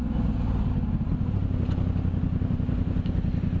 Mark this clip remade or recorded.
recorded